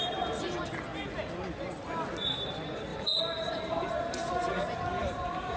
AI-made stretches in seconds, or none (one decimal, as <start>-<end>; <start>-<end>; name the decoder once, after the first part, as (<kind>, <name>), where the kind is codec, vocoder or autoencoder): 2.9-4.3 (vocoder, BigVGAN v2); 4.9-5.6